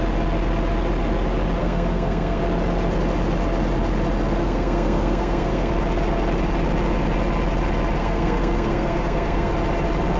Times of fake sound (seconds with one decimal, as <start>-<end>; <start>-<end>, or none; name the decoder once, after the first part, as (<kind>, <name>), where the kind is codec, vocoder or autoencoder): 1.6-2.4 (codec, SNAC); 4.4-5.7; 8.0-9.5